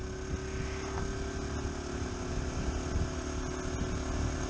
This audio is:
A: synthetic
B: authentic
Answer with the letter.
B